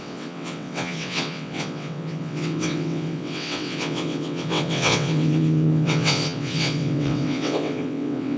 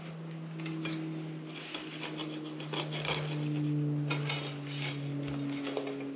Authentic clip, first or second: second